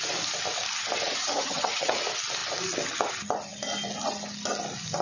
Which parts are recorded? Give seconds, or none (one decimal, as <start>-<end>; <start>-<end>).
0.0-1.2; 1.9-5.0